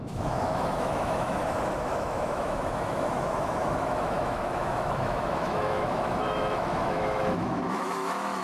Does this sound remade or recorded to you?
remade